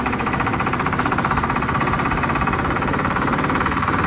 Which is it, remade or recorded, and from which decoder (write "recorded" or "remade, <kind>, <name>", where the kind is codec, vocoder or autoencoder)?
remade, vocoder, BigVGAN v2